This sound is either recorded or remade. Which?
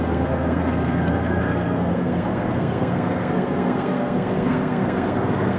remade